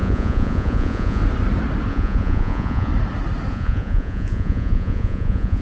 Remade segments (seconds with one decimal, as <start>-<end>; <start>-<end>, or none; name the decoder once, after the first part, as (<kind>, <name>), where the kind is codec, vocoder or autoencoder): 0.0-1.2 (vocoder, Vocos); 1.9-2.9; 3.5-5.6

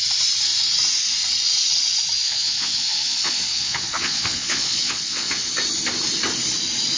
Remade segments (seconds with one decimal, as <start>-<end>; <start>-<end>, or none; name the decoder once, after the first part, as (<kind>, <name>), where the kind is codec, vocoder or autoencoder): 2.2-5.5 (vocoder, Vocos)